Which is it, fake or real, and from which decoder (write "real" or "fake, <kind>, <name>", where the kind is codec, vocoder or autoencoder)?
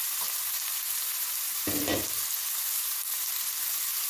real